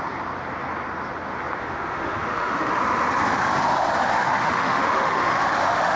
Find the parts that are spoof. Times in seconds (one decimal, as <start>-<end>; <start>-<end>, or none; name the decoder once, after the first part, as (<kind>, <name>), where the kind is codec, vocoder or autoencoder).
1.6-2.8 (autoencoder, DAC-VAE); 4.1-6.0